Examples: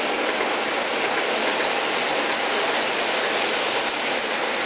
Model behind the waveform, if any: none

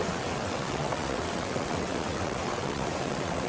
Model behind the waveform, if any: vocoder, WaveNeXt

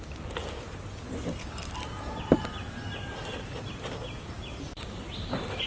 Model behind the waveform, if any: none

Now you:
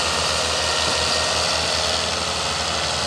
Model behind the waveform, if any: none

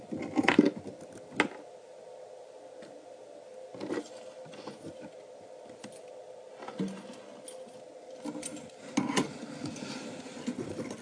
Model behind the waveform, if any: none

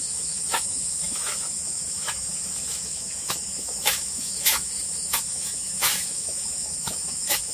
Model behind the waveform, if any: autoencoder, DAC-VAE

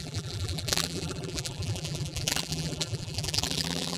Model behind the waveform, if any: vocoder, BigVGAN v2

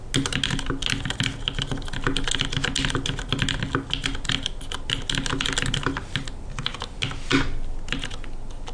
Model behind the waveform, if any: none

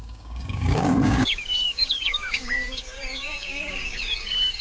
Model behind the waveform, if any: codec, DAC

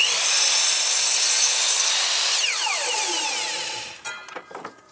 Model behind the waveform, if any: none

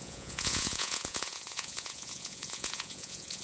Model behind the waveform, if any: vocoder, Vocos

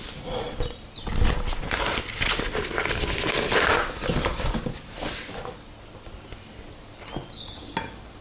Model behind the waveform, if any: none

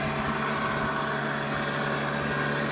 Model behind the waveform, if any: none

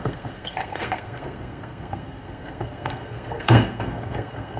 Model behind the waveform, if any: codec, SNAC